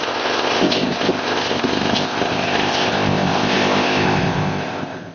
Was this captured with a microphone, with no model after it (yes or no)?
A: no